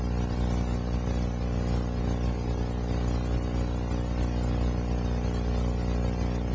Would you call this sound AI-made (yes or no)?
no